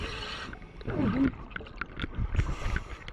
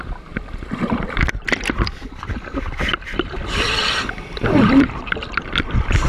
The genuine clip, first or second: first